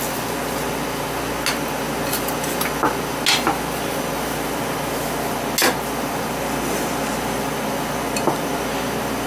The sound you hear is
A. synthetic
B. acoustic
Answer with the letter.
B